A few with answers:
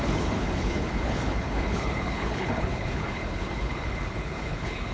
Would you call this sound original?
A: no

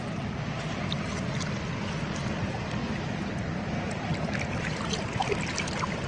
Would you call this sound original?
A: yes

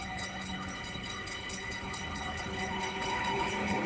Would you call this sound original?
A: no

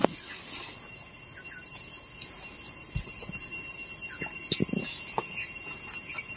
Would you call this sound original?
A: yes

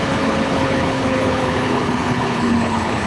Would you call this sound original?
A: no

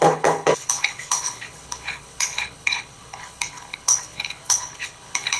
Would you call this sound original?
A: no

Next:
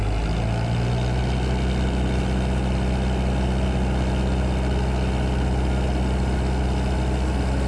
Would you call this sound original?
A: yes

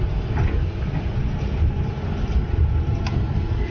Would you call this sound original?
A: yes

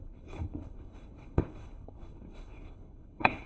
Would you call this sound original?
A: no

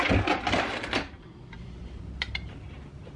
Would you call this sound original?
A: yes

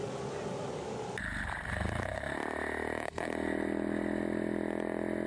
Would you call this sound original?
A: yes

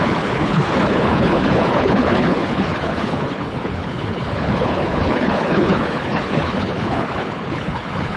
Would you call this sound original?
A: no